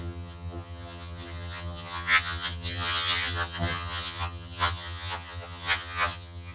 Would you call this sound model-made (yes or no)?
yes